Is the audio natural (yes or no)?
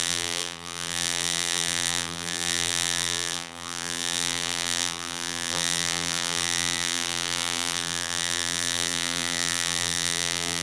no